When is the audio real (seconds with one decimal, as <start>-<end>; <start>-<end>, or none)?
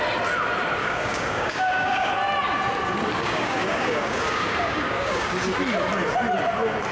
0.0-0.8; 2.1-3.2; 5.3-6.9